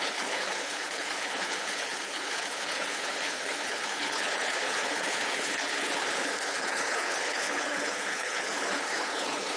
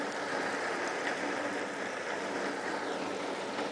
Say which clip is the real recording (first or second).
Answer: second